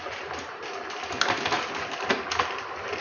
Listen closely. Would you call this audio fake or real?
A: real